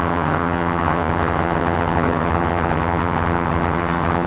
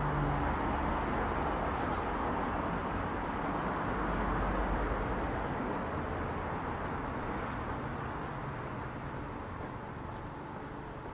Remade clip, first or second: first